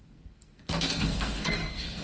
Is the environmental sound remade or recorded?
remade